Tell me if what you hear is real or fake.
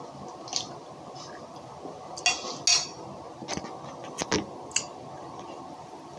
real